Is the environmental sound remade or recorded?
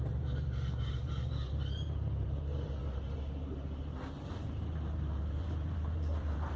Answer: remade